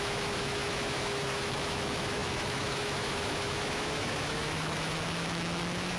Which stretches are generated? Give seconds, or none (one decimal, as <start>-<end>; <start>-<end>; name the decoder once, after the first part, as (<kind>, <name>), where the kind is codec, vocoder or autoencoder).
0.0-6.0 (autoencoder, DAC-VAE)

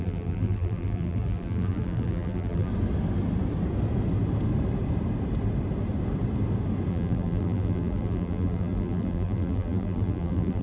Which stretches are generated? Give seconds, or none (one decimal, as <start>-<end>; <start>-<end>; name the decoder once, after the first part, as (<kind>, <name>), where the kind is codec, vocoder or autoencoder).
0.0-2.7 (vocoder, BigVGAN v2); 6.9-10.6

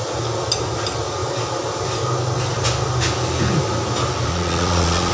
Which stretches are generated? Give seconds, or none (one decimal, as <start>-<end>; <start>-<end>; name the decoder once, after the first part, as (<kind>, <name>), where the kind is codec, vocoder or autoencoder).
4.3-5.1 (vocoder, Vocos)

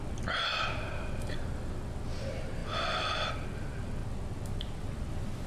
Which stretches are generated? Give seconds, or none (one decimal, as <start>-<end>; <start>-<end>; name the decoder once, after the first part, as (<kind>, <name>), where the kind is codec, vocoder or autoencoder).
none

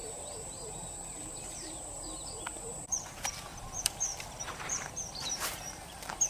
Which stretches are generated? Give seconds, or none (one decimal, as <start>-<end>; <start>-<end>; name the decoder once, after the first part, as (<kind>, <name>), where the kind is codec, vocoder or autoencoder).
0.0-6.3 (vocoder, BigVGAN v2)